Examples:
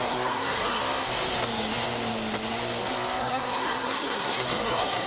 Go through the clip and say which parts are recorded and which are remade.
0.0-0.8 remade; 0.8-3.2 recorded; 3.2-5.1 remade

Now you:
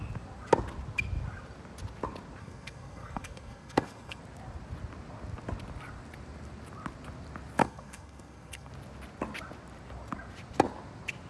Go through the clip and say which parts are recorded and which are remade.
0.0-2.4 recorded; 2.4-4.2 remade; 4.2-7.6 recorded; 7.6-8.7 remade; 8.7-11.3 recorded

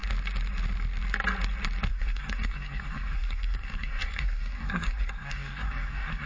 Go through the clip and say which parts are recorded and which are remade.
0.0-1.9 recorded; 1.9-6.3 remade

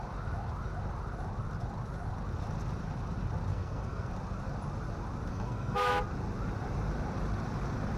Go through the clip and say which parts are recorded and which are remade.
0.0-3.5 recorded; 3.5-4.1 remade; 4.1-5.3 recorded; 5.3-5.9 remade; 5.9-8.0 recorded